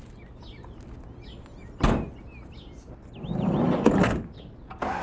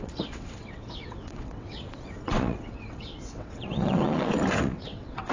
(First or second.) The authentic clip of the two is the first